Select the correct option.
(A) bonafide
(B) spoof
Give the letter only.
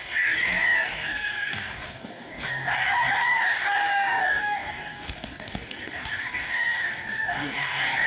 B